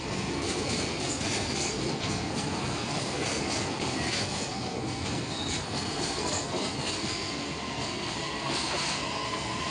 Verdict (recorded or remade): remade